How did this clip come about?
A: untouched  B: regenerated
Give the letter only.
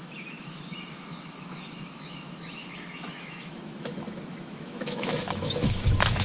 B